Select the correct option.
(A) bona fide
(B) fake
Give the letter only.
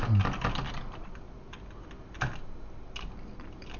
A